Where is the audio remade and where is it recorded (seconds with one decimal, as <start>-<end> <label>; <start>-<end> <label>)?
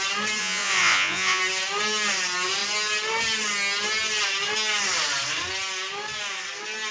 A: 0.0-0.4 recorded; 0.4-1.4 remade; 1.4-6.9 recorded